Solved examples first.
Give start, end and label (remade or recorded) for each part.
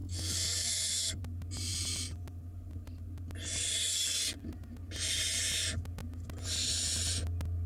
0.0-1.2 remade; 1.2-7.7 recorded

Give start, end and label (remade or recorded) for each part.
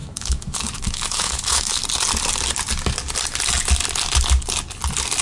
0.0-1.8 remade; 1.8-5.2 recorded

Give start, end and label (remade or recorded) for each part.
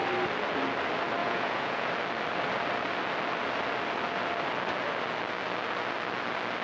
0.0-1.2 recorded; 1.2-1.9 remade; 1.9-6.6 recorded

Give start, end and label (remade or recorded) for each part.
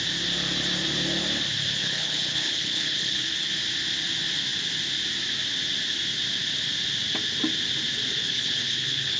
0.0-1.8 recorded; 1.8-3.5 remade; 3.5-8.2 recorded; 8.2-9.2 remade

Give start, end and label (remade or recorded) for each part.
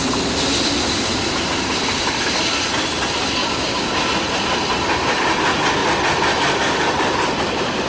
0.0-3.4 recorded; 3.4-3.9 remade; 3.9-7.9 recorded